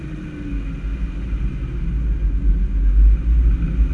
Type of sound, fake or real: real